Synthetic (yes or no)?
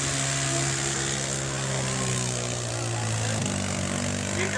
no